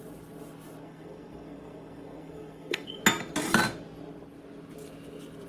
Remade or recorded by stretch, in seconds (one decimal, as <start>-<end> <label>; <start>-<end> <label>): 0.0-0.8 recorded; 0.8-3.0 remade; 3.0-5.5 recorded